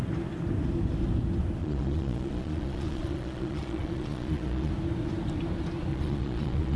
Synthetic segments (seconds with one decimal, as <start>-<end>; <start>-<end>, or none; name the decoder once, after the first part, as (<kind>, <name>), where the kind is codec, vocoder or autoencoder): 1.6-4.7 (vocoder, Vocos); 5.9-6.8